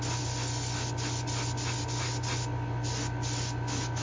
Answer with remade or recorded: recorded